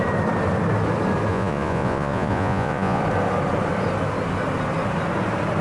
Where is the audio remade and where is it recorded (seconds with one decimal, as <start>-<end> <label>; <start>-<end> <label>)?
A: 0.0-1.3 recorded; 1.3-3.0 remade; 3.0-5.6 recorded